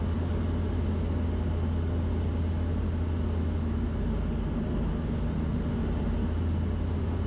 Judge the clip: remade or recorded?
recorded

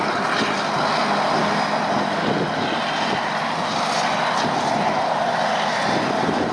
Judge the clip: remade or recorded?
recorded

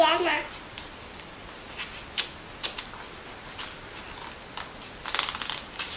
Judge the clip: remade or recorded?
recorded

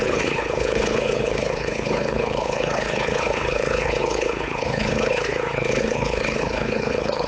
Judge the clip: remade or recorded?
remade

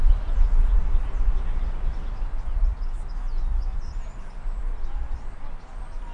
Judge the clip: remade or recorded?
recorded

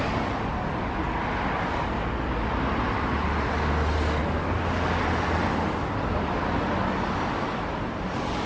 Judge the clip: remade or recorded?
recorded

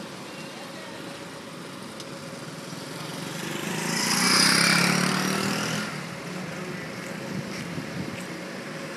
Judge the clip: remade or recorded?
recorded